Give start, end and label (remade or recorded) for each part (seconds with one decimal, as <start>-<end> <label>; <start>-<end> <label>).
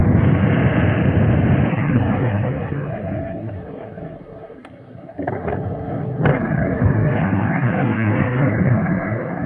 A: 0.0-1.7 recorded; 1.7-9.5 remade